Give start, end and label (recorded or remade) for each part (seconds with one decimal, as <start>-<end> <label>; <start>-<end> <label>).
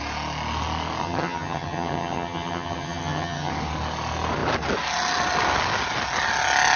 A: 0.0-1.0 recorded; 1.0-3.5 remade; 3.5-6.8 recorded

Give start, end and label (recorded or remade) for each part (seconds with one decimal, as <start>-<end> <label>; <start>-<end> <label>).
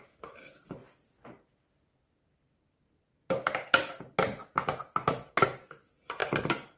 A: 0.0-6.8 recorded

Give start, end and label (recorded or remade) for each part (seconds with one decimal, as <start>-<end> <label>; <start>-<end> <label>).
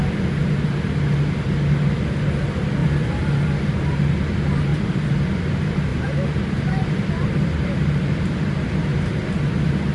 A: 0.0-2.8 recorded; 2.8-3.7 remade; 3.7-4.7 recorded; 4.7-5.3 remade; 5.3-9.9 recorded